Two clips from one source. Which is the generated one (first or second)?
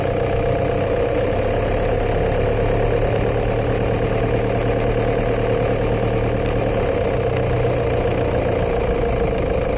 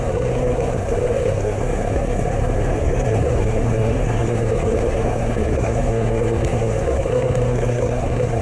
second